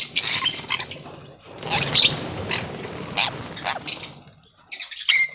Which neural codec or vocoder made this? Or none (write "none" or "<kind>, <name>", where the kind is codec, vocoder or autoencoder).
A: none